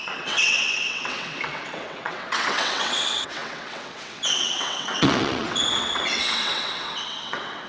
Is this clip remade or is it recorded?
remade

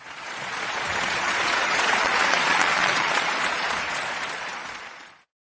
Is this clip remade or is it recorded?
remade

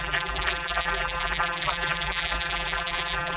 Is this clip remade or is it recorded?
remade